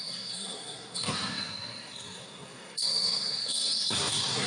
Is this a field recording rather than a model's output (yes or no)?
no